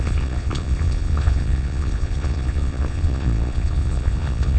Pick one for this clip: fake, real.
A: fake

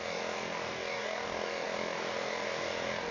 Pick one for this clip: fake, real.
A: fake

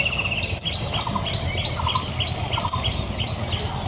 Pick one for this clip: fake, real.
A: real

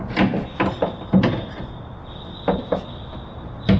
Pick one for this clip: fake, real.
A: real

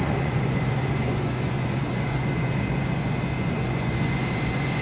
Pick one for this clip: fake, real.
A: fake